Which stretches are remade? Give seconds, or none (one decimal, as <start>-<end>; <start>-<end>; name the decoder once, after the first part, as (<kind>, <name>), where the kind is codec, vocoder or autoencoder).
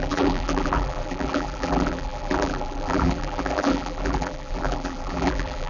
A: 0.0-5.7 (vocoder, BigVGAN v2)